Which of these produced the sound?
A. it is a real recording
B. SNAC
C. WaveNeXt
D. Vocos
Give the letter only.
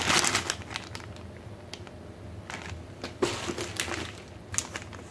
A